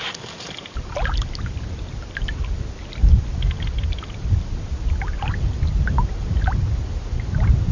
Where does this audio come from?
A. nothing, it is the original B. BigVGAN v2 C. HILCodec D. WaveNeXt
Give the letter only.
A